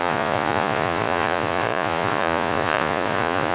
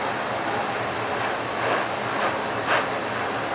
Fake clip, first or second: first